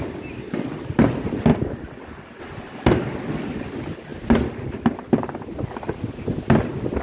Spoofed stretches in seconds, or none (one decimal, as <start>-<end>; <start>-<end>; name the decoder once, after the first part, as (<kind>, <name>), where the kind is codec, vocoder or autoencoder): none